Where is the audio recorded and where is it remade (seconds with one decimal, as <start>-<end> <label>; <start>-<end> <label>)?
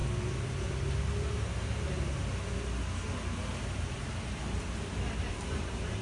0.0-3.6 recorded; 3.6-4.4 remade; 4.4-5.5 recorded; 5.5-6.0 remade